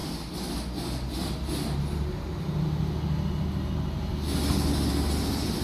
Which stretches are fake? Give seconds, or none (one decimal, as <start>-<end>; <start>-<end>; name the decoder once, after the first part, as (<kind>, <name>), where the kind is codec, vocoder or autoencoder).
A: none